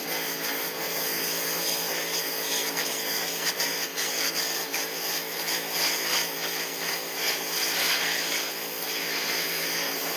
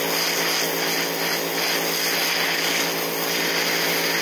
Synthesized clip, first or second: first